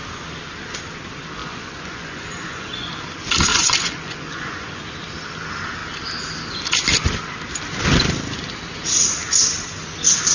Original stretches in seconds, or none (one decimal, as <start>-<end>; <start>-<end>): 0.0-1.4; 2.9-3.5; 4.8-10.3